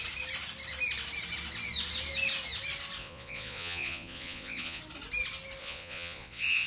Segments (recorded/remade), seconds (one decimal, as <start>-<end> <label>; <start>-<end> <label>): 0.0-3.0 recorded; 3.0-4.8 remade; 4.8-5.6 recorded; 5.6-6.7 remade